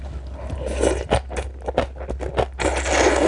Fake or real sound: real